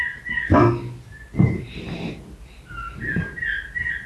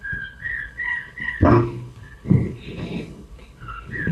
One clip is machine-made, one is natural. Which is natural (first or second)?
first